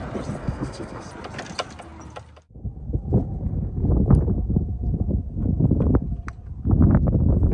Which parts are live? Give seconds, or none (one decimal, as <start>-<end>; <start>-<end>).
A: 0.0-0.4; 1.1-7.5